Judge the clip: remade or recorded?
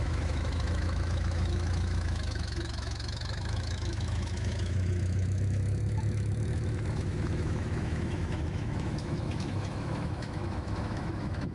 remade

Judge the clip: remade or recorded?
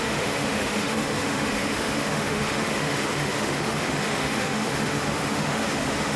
remade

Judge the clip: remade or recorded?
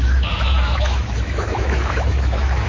remade